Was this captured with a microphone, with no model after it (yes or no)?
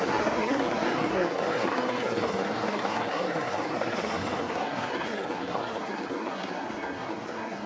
no